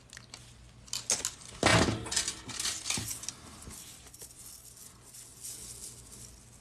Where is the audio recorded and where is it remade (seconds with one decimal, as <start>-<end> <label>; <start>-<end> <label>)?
0.0-6.6 recorded